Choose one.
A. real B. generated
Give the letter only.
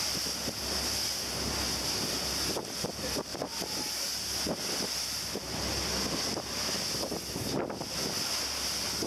A